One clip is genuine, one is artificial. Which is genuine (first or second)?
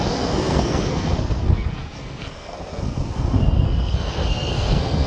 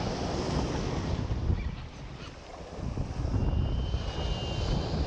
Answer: second